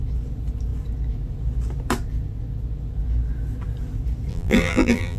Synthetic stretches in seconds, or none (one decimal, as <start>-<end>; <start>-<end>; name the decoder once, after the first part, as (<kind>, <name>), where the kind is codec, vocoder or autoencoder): 4.3-5.2 (vocoder, BigVGAN v2)